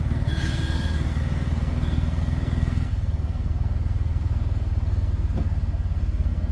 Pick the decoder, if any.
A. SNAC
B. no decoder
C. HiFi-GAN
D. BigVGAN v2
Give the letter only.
A